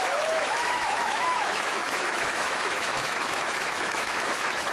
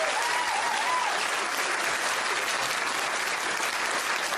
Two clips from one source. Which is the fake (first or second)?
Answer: first